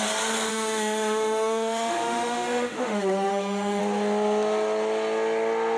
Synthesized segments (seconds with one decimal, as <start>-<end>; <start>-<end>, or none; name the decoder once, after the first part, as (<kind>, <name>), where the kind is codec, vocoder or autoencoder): 0.5-3.8 (autoencoder, DAC-VAE)